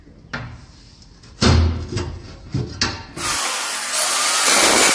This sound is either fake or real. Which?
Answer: real